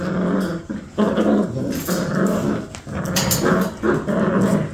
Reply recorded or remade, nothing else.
recorded